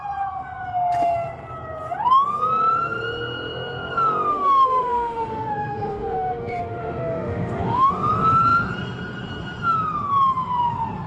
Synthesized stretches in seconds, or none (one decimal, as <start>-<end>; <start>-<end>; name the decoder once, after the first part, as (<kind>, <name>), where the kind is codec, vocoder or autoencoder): 4.3-7.9 (autoencoder, DAC-VAE)